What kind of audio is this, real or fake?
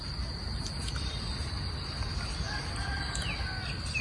real